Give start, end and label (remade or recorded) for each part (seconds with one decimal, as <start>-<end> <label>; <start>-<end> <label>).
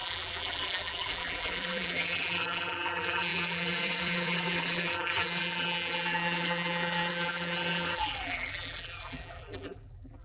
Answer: 0.0-10.2 remade